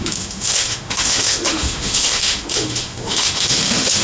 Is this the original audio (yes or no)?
no